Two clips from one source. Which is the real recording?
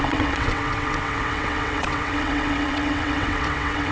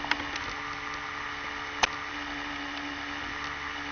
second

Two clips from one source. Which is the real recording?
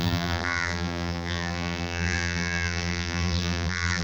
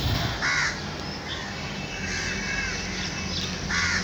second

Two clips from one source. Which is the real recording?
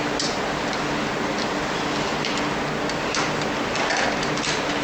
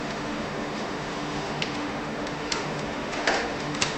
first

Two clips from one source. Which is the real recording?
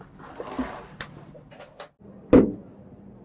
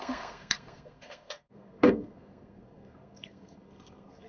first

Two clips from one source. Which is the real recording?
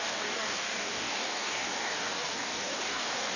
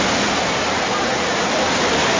second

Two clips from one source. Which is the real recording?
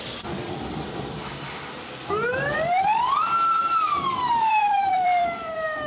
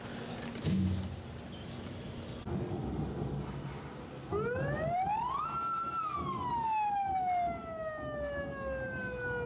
second